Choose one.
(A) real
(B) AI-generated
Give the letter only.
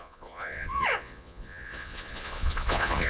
B